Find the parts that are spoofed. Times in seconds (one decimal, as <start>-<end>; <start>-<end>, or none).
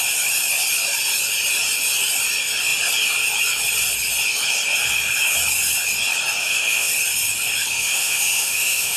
6.4-6.9; 7.7-9.0